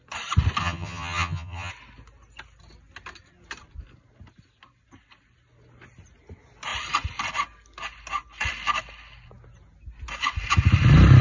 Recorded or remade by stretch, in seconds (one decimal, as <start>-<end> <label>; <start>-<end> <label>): 0.0-0.6 recorded; 0.6-1.7 remade; 1.7-11.2 recorded